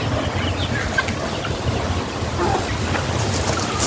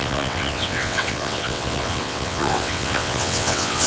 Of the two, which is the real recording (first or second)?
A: first